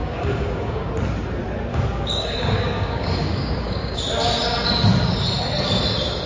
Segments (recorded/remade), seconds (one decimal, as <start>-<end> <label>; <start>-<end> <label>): 0.0-0.9 remade; 0.9-1.7 recorded; 1.7-4.0 remade; 4.0-6.3 recorded